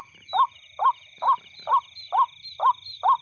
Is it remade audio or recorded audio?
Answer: recorded